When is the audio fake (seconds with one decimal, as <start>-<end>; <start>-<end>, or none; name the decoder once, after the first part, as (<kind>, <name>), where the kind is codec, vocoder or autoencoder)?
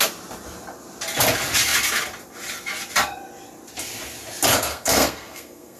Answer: 4.7-5.8 (codec, SNAC)